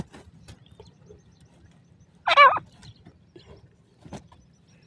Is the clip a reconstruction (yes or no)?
no